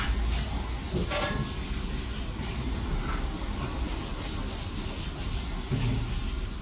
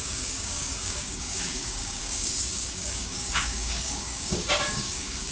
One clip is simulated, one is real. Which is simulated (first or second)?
second